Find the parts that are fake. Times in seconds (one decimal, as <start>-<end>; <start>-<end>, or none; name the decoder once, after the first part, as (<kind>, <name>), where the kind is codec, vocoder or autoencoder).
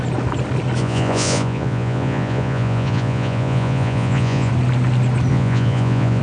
0.8-4.5 (vocoder, Vocos); 5.3-6.2